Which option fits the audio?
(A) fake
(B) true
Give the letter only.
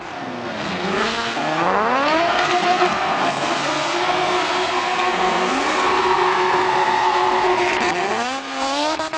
A